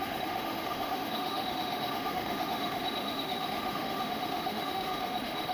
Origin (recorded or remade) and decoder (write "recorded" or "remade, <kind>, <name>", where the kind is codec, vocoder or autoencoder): remade, autoencoder, DAC-VAE